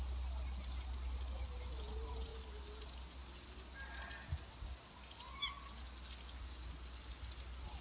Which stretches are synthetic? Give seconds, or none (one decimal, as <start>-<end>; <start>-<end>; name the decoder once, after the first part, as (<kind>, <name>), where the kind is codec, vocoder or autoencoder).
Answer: none